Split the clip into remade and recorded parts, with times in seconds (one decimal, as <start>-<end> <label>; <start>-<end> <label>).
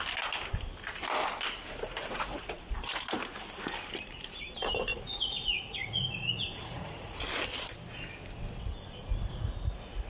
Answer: 0.0-2.0 recorded; 2.0-2.7 remade; 2.7-4.9 recorded; 4.9-7.2 remade; 7.2-9.0 recorded; 9.0-10.1 remade